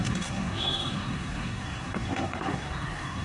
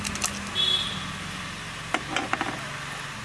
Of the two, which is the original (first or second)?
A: second